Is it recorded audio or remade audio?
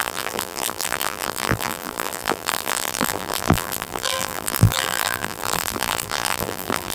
remade